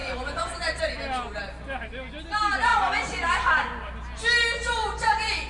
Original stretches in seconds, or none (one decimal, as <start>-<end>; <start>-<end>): 0.8-4.8